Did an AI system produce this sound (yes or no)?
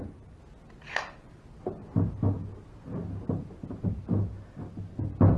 no